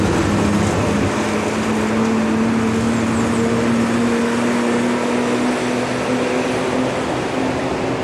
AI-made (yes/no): no